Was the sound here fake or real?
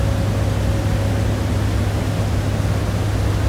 real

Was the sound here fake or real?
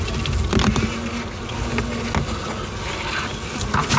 real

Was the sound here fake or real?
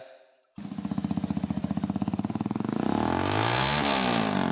real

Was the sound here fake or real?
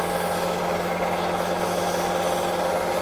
real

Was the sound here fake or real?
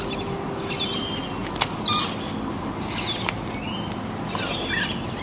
real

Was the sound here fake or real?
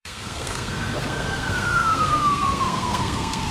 fake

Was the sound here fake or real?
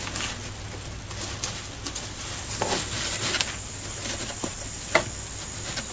real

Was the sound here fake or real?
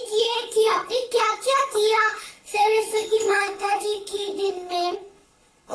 fake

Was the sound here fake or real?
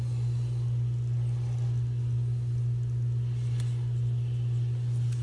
real